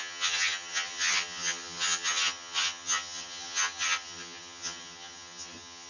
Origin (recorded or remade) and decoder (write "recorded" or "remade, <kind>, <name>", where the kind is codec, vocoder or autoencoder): remade, vocoder, HiFi-GAN